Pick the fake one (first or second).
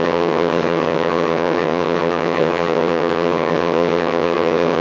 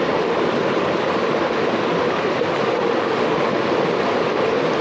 first